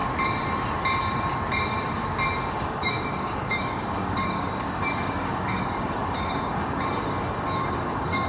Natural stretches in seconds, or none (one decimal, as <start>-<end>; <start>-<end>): 0.0-2.5

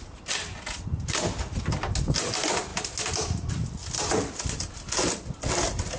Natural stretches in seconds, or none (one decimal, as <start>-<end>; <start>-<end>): 0.0-6.0